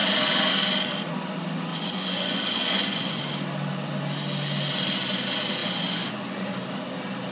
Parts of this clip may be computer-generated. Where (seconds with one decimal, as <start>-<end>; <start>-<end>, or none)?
1.7-3.2; 5.6-6.4

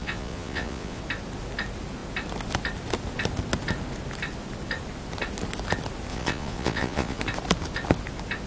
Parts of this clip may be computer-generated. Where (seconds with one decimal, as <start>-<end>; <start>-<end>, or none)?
0.0-1.0; 6.1-7.2

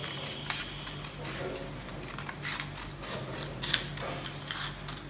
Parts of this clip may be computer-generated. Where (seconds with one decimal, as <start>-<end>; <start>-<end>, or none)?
none